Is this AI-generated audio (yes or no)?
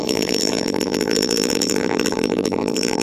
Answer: yes